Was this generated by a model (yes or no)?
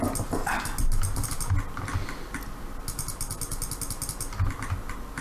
no